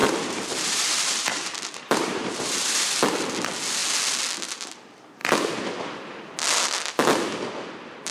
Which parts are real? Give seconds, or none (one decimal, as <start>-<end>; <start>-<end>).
3.0-8.1